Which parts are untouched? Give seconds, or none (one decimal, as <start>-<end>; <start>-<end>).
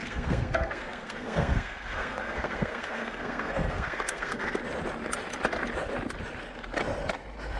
4.6-7.6